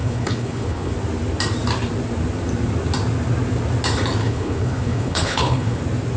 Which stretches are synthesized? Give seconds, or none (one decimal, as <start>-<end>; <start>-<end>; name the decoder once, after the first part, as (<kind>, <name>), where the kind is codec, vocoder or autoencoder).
0.0-0.9 (codec, HILCodec); 4.2-5.8